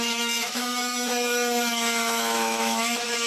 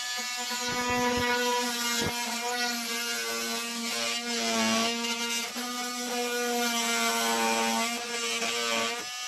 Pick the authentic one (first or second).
second